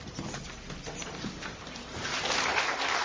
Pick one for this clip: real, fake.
real